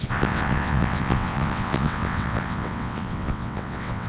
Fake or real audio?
fake